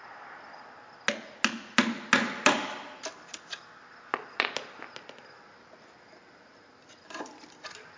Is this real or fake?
real